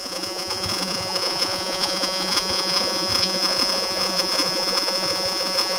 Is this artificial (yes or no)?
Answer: yes